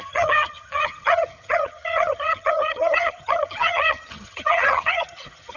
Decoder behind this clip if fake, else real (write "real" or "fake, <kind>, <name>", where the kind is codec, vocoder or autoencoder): fake, vocoder, HiFi-GAN